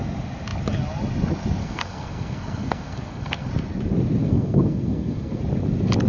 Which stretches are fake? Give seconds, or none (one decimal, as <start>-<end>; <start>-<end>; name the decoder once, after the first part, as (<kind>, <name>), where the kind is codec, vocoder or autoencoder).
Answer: 1.6-3.5 (codec, SNAC); 4.2-5.4